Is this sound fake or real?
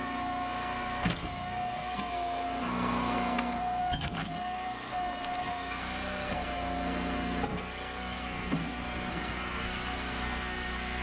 fake